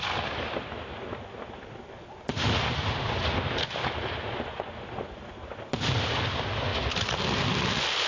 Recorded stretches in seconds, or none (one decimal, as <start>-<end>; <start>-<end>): 0.0-8.1